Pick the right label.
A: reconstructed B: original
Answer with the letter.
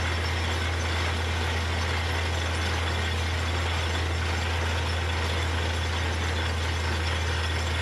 B